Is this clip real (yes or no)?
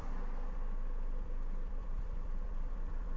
no